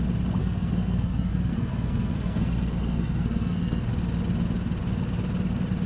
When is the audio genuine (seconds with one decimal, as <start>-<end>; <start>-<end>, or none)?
0.0-0.4; 3.9-5.9